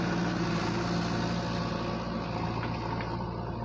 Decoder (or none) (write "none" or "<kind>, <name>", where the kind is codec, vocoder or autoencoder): none